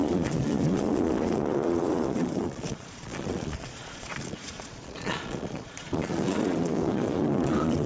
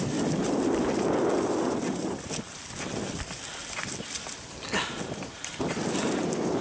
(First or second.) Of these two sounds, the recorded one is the second